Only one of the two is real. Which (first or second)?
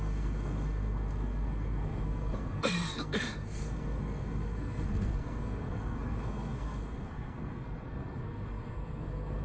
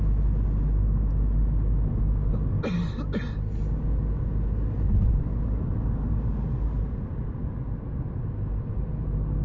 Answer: second